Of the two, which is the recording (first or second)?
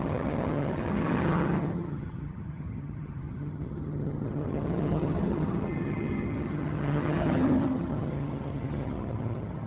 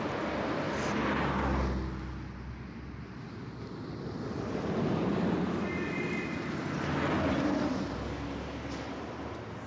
second